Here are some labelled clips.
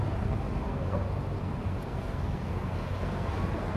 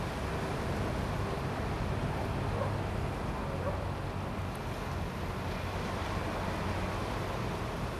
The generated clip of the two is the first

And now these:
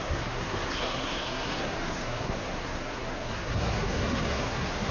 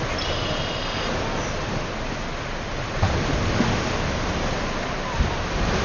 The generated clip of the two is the first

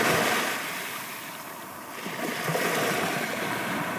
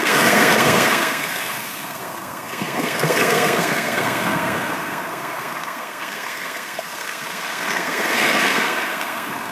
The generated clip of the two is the second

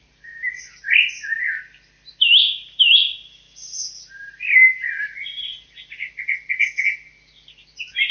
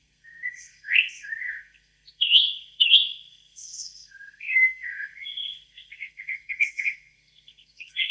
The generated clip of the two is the second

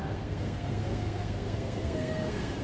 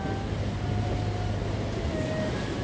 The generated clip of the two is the first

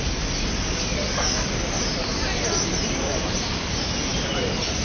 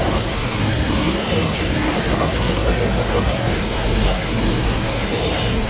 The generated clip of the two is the second